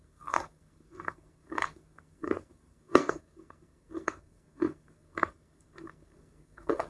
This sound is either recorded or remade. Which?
remade